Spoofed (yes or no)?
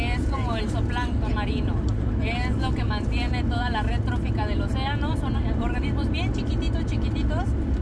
no